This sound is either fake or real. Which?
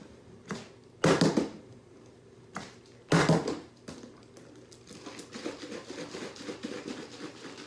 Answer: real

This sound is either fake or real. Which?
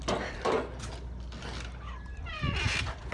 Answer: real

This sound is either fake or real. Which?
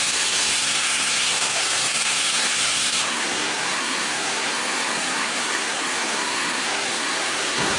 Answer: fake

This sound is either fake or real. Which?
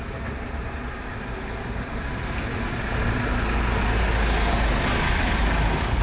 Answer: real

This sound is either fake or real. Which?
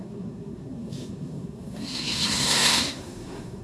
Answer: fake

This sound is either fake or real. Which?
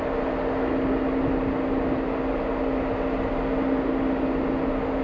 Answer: real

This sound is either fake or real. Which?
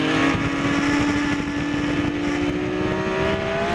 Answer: real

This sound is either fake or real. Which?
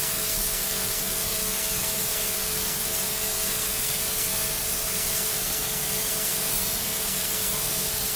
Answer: fake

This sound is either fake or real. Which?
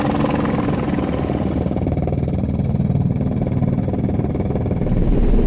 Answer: real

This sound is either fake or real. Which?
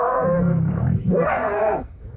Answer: fake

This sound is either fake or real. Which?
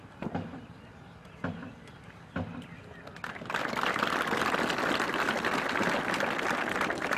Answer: real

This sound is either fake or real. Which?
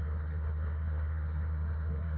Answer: fake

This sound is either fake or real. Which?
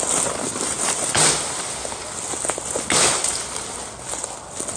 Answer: real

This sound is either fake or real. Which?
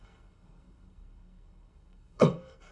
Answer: fake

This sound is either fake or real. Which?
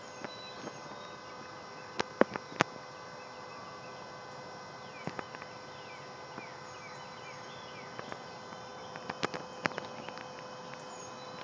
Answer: real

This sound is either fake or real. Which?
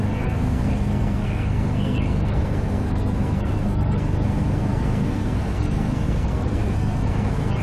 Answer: fake